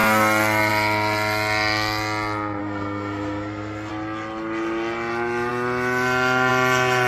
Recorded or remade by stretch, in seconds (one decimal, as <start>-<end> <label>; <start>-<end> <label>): 0.0-2.6 recorded; 2.6-3.9 remade; 3.9-7.1 recorded